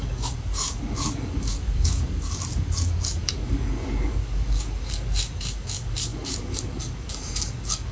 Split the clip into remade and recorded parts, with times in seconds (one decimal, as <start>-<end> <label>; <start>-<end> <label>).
0.0-7.9 remade